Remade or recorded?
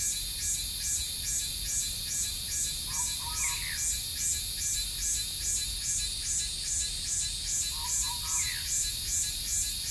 recorded